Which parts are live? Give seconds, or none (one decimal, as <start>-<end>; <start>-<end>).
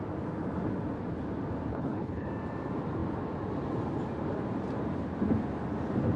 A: 0.0-1.7; 2.3-6.2